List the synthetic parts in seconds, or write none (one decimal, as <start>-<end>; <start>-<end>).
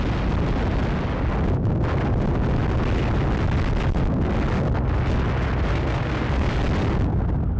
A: 5.7-6.5